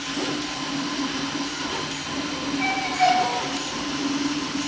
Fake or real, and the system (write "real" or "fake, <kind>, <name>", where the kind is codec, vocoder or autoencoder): real